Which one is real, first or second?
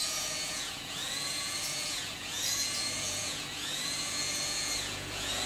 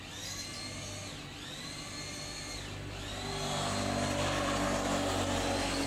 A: second